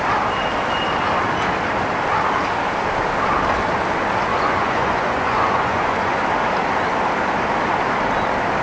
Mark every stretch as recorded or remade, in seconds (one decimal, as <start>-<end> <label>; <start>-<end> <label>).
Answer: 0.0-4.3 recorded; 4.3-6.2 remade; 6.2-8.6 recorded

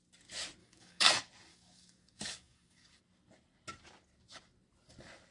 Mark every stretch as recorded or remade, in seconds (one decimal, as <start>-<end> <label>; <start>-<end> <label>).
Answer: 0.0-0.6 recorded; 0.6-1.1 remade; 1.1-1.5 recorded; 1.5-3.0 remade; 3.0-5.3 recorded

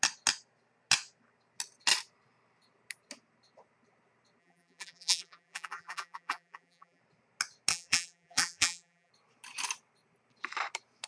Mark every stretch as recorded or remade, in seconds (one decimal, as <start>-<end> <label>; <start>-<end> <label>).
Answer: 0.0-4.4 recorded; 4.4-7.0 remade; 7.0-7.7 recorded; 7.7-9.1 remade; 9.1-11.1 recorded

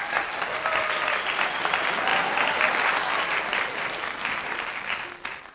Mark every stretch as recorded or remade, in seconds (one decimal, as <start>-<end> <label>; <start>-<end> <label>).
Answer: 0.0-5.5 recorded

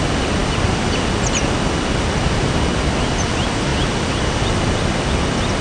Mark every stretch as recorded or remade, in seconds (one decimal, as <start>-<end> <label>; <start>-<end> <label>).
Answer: 0.0-5.6 recorded